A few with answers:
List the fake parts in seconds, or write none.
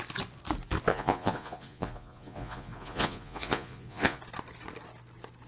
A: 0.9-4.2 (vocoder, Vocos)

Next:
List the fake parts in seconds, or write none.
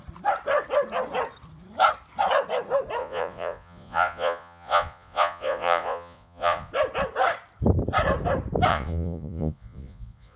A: 3.0-6.7 (vocoder, Vocos); 8.7-10.4